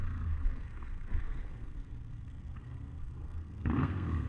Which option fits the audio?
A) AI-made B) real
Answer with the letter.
A